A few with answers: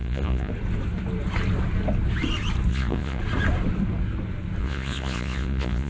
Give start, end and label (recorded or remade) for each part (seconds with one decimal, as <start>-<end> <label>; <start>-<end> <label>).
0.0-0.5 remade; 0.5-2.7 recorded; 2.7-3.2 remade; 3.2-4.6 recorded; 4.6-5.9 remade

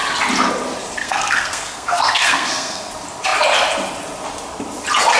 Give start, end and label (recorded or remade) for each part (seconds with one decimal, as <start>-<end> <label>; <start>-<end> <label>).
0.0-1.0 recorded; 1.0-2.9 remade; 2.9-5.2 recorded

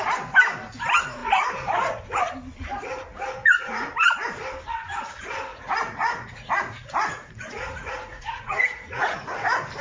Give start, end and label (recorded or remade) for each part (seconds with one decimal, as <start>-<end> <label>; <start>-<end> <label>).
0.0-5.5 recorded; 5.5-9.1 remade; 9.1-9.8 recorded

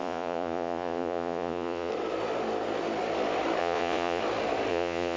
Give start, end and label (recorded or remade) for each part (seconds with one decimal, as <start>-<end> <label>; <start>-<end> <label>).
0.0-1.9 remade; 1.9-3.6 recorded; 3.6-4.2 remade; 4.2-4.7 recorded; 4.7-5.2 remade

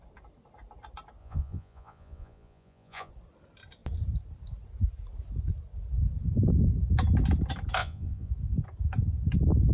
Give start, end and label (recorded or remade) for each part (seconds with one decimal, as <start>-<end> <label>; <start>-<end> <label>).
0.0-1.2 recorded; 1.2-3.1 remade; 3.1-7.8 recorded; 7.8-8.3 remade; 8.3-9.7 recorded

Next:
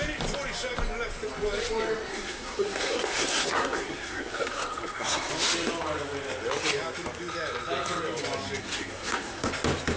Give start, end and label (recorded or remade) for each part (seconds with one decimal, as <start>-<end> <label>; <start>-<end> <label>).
0.0-2.1 recorded; 2.1-5.3 remade; 5.3-8.6 recorded; 8.6-9.5 remade; 9.5-10.0 recorded

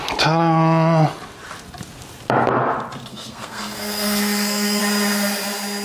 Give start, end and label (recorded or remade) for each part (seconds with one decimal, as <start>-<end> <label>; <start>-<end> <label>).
0.0-3.1 recorded; 3.1-4.8 remade; 4.8-5.8 recorded